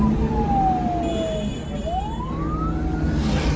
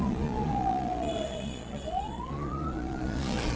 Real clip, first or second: first